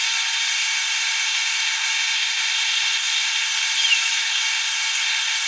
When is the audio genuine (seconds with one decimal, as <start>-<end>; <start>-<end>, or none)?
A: 0.0-0.5; 3.8-4.2